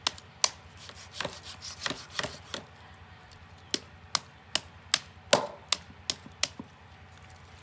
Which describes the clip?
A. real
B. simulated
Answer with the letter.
A